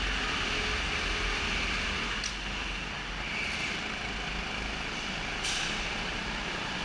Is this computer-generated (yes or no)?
no